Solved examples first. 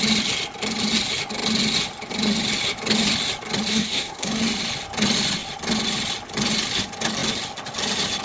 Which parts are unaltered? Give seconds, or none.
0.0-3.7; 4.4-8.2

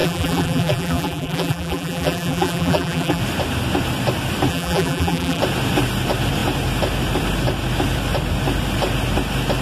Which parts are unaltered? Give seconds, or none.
3.2-4.5; 5.4-9.6

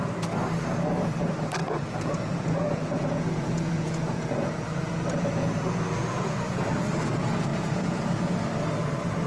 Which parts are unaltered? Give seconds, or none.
0.0-1.6; 6.7-7.5; 8.4-9.3

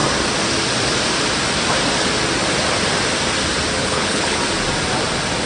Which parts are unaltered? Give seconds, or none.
0.0-3.8; 4.4-5.5